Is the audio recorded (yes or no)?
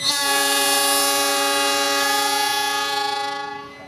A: no